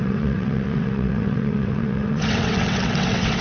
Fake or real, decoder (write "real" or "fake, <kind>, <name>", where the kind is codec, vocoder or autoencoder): fake, vocoder, WaveNeXt